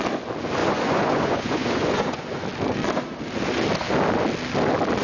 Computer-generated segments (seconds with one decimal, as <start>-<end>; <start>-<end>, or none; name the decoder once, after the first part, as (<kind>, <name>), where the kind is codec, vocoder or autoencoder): 0.6-2.4 (vocoder, Vocos)